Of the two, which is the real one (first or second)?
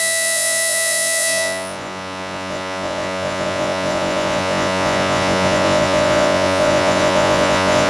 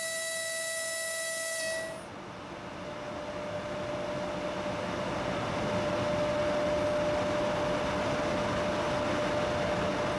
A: second